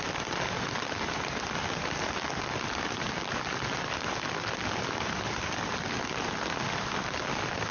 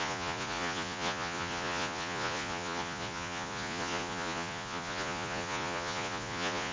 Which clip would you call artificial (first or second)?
second